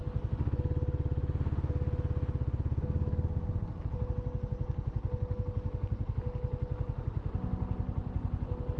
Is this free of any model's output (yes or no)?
yes